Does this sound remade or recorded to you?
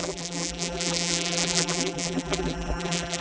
remade